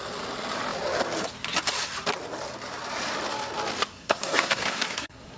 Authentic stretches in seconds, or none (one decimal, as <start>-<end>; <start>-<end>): 0.0-3.9